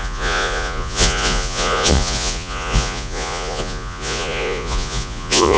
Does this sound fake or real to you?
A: fake